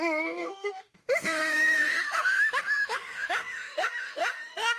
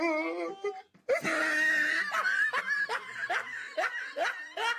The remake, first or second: first